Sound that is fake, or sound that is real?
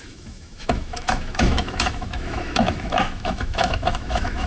fake